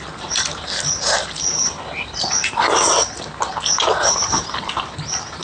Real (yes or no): yes